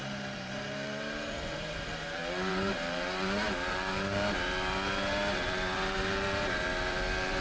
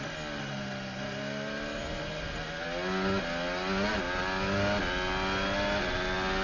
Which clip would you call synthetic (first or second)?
first